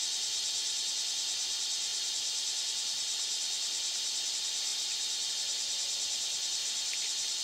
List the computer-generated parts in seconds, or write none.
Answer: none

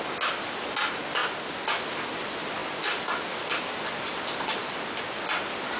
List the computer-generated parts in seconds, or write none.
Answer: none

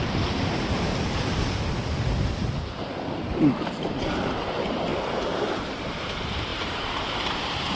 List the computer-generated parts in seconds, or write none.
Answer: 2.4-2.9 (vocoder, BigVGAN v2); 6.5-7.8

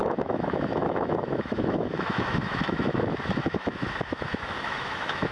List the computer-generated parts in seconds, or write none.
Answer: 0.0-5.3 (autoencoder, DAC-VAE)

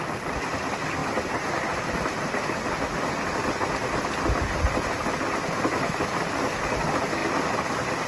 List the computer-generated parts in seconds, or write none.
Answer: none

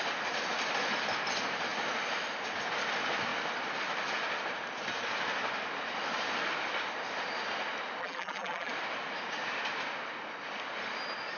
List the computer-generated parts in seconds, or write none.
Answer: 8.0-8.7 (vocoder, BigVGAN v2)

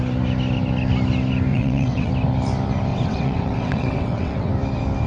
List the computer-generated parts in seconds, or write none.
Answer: 1.5-2.1 (vocoder, WaveNeXt); 2.9-4.5